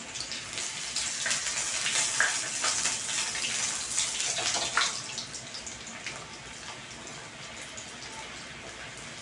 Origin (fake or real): real